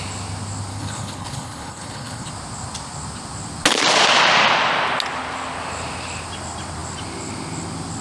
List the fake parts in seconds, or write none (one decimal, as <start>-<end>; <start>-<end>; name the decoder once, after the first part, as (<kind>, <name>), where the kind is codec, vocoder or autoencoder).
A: 0.7-2.3 (codec, HILCodec)